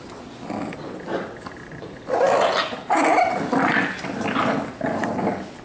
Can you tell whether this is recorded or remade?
recorded